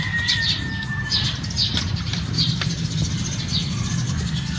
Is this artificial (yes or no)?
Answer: no